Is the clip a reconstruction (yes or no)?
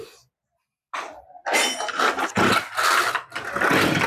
no